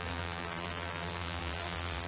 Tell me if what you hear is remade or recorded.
remade